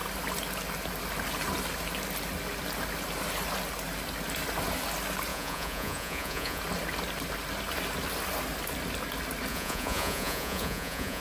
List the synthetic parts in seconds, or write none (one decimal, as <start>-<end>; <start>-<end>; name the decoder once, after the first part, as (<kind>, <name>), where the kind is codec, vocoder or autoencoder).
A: 5.3-6.6 (vocoder, Vocos); 9.5-11.2

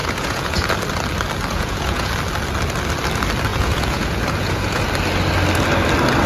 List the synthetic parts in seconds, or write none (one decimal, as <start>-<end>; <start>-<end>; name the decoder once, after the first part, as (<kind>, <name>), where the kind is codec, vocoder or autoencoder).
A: 0.0-0.7 (vocoder, Vocos); 1.5-2.1; 3.5-4.8